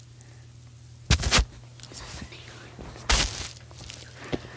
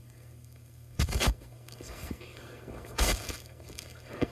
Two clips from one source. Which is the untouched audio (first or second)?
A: first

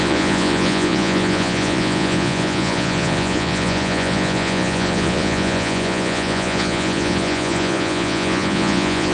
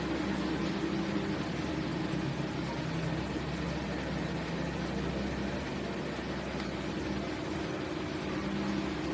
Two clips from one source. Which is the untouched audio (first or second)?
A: second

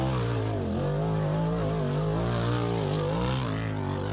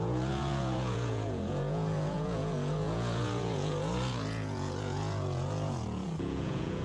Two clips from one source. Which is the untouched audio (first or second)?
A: first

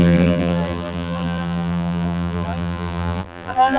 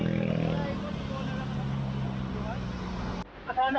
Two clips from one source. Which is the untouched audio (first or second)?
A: second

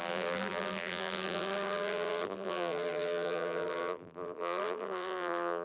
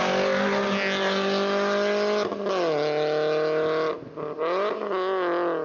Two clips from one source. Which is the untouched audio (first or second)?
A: second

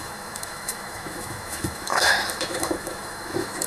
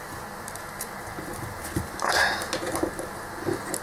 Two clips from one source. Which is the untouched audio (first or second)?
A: second